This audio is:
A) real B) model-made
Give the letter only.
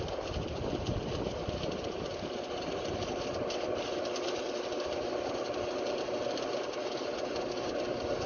A